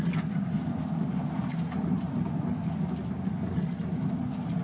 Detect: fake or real real